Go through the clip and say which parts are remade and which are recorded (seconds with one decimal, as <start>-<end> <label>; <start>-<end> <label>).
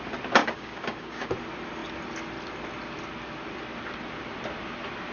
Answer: 0.0-0.4 recorded; 0.4-1.3 remade; 1.3-5.1 recorded